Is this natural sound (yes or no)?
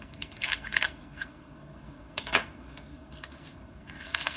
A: no